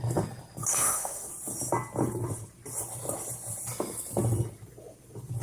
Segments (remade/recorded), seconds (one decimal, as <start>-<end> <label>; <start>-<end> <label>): 0.0-0.7 recorded; 0.7-1.3 remade; 1.3-5.4 recorded